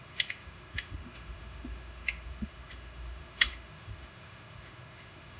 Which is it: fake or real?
fake